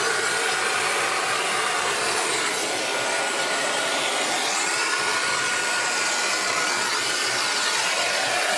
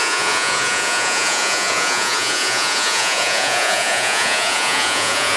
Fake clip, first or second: second